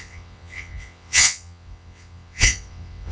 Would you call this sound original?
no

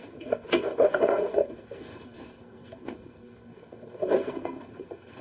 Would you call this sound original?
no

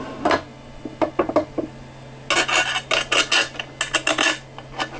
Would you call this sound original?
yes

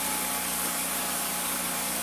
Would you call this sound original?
no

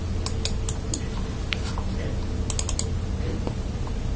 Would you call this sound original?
yes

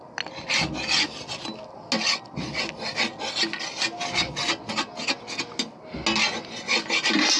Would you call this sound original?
yes